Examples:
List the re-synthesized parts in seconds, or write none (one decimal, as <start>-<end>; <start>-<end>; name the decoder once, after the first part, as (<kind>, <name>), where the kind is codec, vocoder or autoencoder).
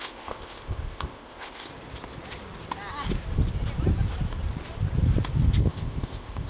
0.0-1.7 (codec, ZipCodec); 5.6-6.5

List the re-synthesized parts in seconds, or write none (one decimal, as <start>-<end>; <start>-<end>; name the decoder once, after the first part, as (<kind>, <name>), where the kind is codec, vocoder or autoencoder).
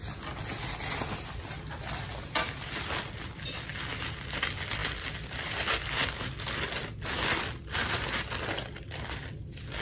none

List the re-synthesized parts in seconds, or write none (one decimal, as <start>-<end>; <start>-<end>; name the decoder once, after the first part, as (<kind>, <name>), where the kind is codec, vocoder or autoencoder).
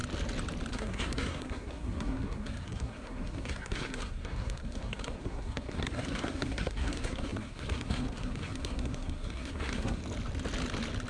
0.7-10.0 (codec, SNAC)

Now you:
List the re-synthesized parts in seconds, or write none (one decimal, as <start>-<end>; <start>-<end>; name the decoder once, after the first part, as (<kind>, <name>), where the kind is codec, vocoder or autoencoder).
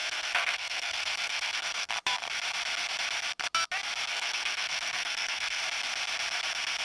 0.0-1.9 (codec, SNAC); 4.1-5.6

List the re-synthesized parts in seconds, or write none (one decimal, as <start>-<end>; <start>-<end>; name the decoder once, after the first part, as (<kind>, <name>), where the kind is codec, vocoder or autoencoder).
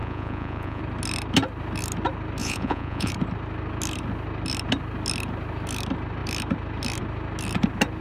0.0-0.8 (vocoder, Vocos); 2.4-3.1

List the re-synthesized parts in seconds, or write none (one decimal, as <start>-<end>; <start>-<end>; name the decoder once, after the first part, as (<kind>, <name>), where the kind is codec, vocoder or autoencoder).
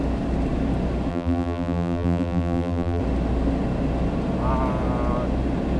1.1-3.0 (vocoder, BigVGAN v2)